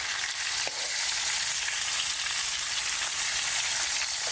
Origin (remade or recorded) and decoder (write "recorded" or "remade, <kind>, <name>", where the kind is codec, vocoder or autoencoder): remade, vocoder, BigVGAN v2